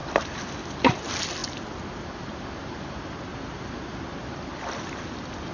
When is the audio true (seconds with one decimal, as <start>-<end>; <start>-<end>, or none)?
0.0-3.3; 3.9-5.5